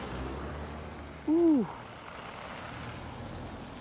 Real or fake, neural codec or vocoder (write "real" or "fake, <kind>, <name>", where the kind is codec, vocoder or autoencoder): real